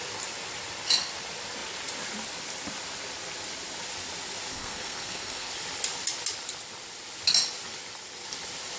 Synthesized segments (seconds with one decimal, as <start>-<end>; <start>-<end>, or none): 4.5-5.5